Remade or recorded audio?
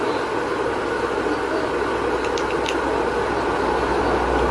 recorded